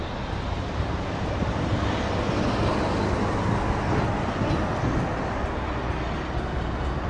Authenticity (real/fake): real